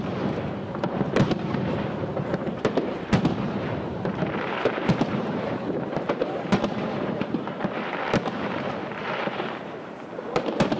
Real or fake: fake